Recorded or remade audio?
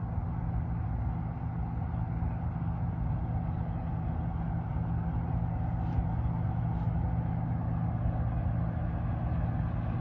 recorded